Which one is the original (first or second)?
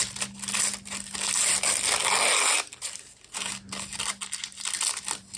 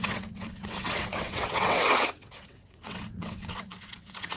first